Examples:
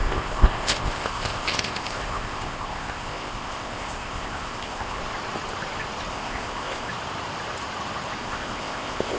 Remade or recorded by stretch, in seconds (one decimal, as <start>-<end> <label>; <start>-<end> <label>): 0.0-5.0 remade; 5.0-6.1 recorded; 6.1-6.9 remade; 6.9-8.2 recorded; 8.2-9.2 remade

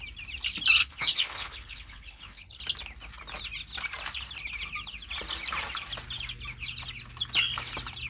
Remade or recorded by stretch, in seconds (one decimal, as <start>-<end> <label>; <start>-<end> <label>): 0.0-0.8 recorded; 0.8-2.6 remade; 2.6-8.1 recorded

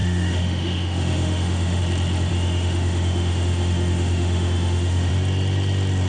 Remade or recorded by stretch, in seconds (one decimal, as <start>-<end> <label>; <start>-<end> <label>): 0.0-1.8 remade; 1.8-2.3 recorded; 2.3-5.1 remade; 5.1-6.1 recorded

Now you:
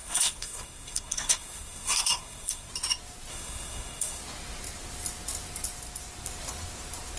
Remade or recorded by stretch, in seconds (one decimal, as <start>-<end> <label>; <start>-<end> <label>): 0.0-2.7 remade; 2.7-3.3 recorded; 3.3-4.2 remade; 4.2-7.2 recorded

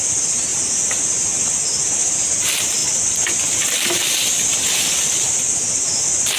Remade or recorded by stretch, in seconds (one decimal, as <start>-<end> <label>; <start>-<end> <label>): 0.0-6.4 recorded

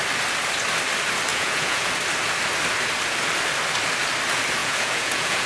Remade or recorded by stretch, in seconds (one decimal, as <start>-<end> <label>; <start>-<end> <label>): 0.0-1.3 recorded; 1.3-1.9 remade; 1.9-4.6 recorded; 4.6-5.5 remade